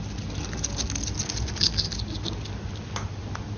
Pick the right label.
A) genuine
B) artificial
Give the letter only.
A